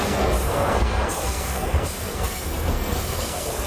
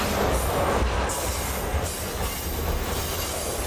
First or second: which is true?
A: second